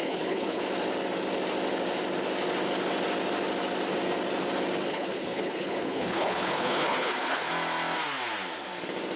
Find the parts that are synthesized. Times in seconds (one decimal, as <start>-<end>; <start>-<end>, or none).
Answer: 0.0-0.6; 4.9-7.5